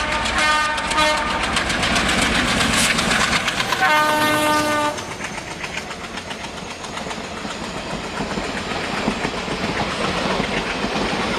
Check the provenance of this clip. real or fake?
real